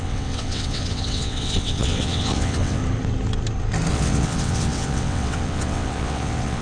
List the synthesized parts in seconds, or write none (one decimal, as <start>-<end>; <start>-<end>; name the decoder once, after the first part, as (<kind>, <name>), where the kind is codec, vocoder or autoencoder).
0.0-2.8 (vocoder, WaveNeXt); 3.9-6.6